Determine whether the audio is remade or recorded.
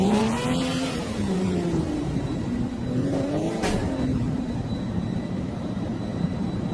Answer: remade